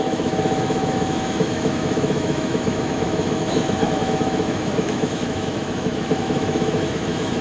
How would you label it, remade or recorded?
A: remade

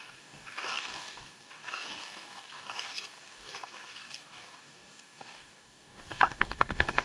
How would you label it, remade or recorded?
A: remade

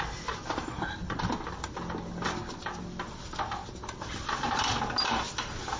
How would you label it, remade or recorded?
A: recorded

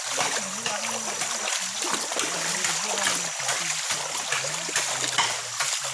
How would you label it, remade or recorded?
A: recorded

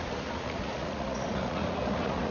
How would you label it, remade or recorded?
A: remade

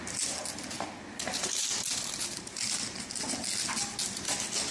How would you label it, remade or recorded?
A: recorded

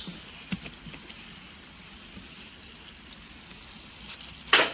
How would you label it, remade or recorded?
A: recorded